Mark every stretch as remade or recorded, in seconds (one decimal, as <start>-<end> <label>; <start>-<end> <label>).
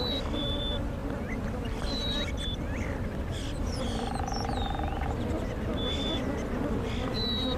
0.0-1.0 recorded; 1.0-5.5 remade; 5.5-7.6 recorded